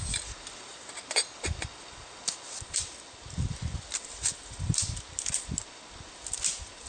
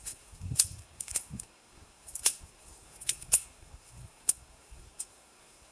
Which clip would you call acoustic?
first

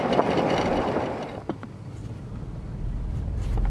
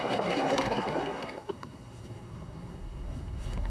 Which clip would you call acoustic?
first